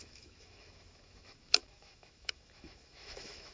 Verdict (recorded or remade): remade